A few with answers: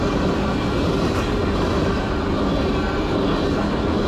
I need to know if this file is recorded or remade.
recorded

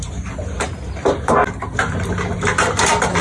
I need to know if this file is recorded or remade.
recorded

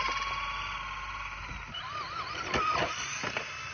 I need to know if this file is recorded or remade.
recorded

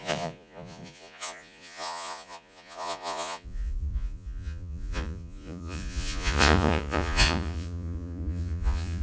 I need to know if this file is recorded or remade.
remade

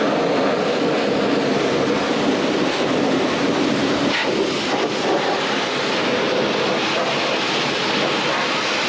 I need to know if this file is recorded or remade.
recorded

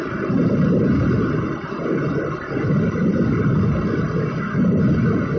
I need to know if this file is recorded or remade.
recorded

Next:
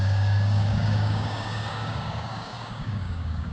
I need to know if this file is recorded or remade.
remade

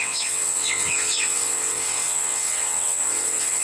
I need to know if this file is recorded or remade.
remade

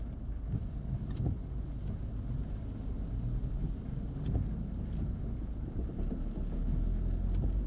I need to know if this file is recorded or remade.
recorded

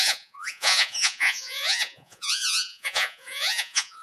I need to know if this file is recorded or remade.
remade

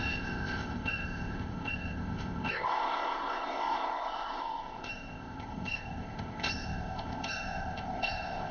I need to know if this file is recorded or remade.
remade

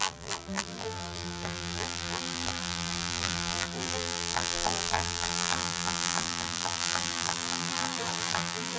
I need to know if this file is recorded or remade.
remade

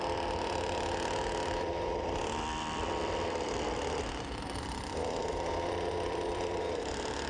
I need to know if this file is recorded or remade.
remade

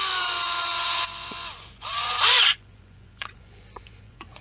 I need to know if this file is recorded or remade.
remade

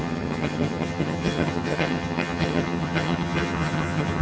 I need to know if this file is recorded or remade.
remade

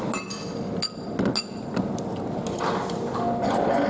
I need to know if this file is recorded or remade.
recorded